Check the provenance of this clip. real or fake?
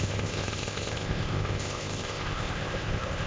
fake